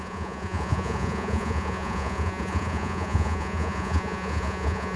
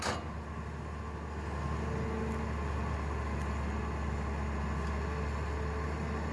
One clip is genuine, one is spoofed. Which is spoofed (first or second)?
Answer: first